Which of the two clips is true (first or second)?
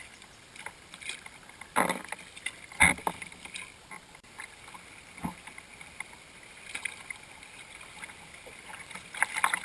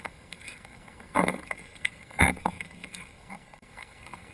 first